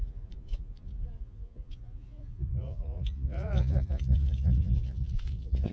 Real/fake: fake